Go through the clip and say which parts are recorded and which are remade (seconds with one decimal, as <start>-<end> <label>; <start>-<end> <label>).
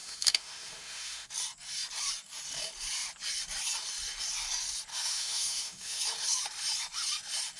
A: 0.0-1.3 remade; 1.3-4.9 recorded; 4.9-6.0 remade; 6.0-7.6 recorded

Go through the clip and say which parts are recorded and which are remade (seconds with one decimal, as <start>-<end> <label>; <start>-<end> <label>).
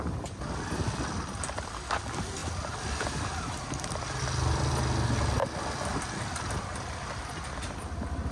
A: 0.0-8.3 recorded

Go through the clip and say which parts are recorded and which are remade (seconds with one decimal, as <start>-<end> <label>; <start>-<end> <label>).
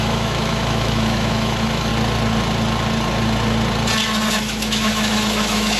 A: 0.0-1.9 remade; 1.9-4.3 recorded; 4.3-5.8 remade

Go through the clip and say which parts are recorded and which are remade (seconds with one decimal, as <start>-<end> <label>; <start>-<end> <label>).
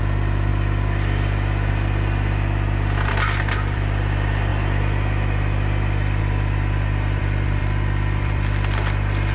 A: 0.0-4.5 remade; 4.5-6.2 recorded; 6.2-7.6 remade; 7.6-8.2 recorded; 8.2-9.3 remade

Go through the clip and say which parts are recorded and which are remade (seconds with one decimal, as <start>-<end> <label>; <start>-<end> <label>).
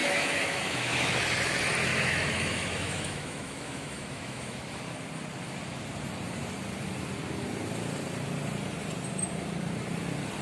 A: 0.0-1.2 remade; 1.2-1.9 recorded; 1.9-4.8 remade; 4.8-10.4 recorded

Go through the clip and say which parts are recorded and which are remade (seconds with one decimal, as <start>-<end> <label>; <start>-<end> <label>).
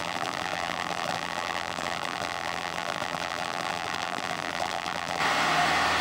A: 0.0-5.2 remade; 5.2-6.0 recorded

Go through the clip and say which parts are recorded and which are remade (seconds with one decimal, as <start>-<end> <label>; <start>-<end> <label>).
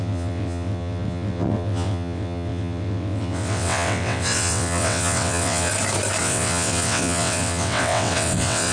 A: 0.0-5.7 remade; 5.7-6.2 recorded; 6.2-8.7 remade